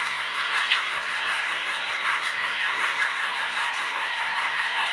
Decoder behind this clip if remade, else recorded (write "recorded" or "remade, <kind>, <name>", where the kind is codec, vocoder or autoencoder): remade, codec, SNAC